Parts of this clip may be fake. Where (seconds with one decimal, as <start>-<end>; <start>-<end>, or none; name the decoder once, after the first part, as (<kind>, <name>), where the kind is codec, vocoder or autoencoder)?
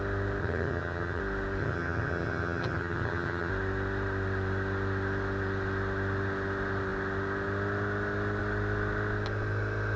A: 0.4-1.2 (vocoder, HiFi-GAN); 1.6-3.5